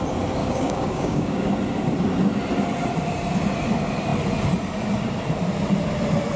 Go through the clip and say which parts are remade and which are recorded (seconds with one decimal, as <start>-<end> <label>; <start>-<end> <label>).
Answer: 0.0-0.4 recorded; 0.4-1.5 remade; 1.5-6.4 recorded